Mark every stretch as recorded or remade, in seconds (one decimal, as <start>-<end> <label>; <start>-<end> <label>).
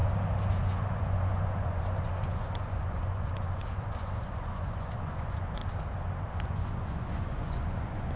0.0-0.5 recorded; 0.5-5.6 remade; 5.6-6.3 recorded; 6.3-8.2 remade